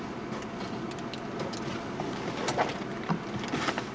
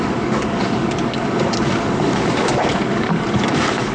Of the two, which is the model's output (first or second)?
second